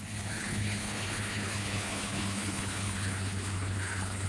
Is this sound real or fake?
fake